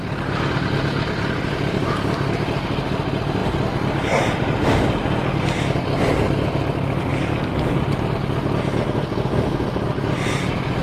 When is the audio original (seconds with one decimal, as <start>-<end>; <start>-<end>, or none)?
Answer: 0.0-7.1; 7.7-10.8